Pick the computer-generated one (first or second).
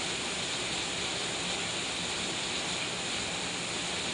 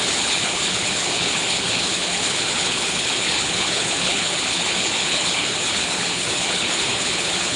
second